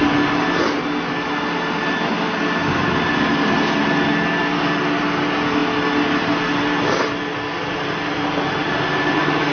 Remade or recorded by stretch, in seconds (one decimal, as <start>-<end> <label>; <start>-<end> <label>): 0.0-9.5 recorded